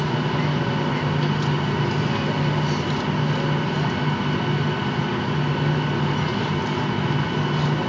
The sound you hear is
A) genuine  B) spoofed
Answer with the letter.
A